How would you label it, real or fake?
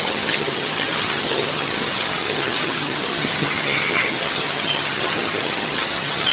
fake